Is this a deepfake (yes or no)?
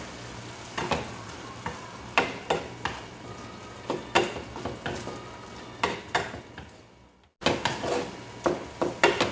no